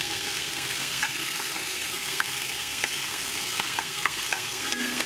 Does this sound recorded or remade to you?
remade